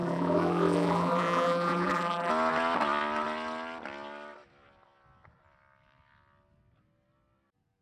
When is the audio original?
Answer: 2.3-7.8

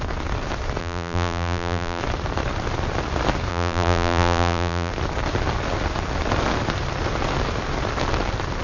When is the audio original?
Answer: 0.0-0.8; 2.0-3.5; 4.9-8.6

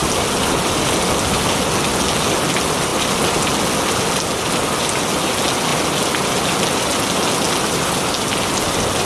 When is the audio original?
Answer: 0.0-9.1